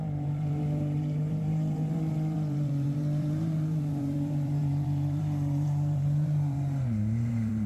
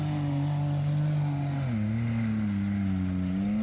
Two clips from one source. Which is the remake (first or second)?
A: first